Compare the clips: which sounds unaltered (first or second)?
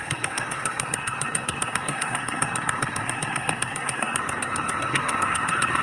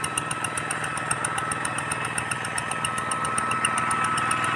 second